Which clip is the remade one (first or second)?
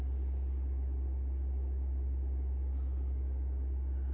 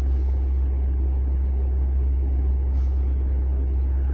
second